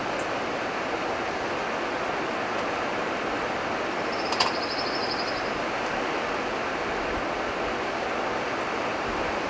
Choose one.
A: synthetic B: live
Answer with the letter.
B